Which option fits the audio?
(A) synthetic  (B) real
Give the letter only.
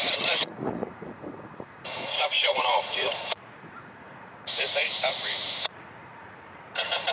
A